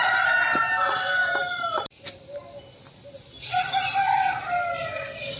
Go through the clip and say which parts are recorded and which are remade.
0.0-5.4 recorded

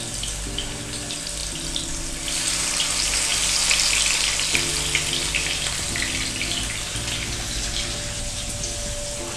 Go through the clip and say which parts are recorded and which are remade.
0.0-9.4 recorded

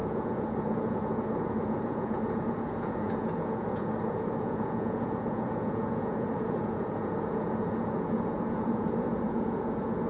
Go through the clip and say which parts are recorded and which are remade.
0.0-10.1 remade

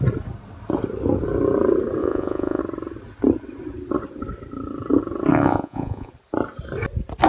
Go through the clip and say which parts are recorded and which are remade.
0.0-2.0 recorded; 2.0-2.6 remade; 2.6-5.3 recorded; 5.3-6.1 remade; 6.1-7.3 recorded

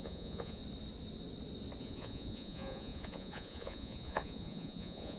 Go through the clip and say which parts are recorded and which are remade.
0.0-0.6 remade; 0.6-1.8 recorded; 1.8-5.2 remade

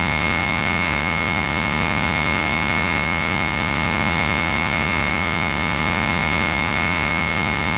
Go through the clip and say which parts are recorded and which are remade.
0.0-7.8 remade

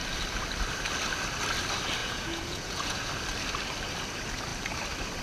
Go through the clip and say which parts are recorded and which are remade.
0.0-2.0 recorded; 2.0-3.1 remade; 3.1-5.2 recorded

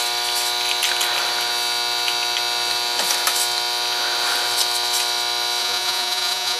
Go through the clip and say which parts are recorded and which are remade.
0.0-5.6 recorded; 5.6-6.6 remade